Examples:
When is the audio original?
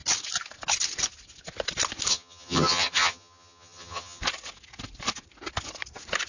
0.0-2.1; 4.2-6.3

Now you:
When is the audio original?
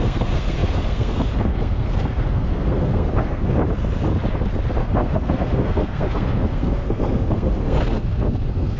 3.6-4.7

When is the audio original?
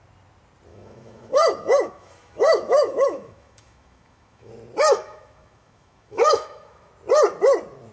0.0-0.7; 4.5-4.9; 6.9-7.9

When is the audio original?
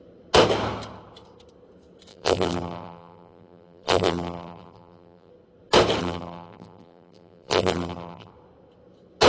0.0-2.1; 5.3-6.0; 8.3-9.3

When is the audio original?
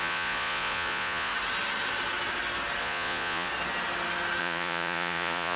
1.3-2.8; 3.5-4.4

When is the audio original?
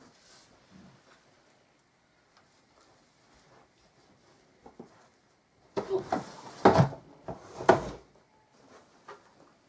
0.0-9.7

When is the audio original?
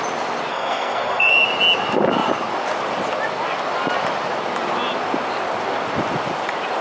0.0-0.5; 1.3-6.8